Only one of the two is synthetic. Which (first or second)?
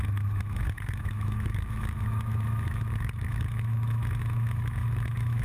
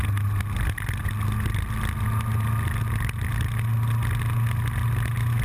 first